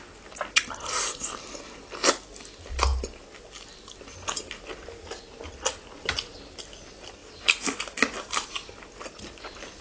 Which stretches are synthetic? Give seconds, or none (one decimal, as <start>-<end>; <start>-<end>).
none